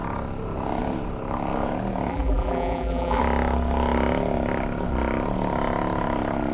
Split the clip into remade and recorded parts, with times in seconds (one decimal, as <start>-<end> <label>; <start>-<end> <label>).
0.0-2.1 recorded; 2.1-3.2 remade; 3.2-6.5 recorded